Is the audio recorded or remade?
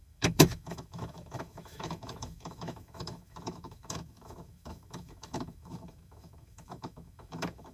remade